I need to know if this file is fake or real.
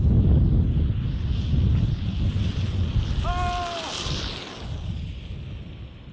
real